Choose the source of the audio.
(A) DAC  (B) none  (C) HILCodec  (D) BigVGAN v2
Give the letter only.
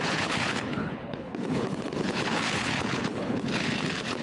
C